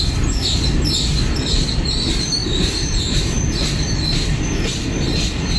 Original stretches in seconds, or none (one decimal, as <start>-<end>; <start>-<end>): 0.0-2.4; 3.3-5.6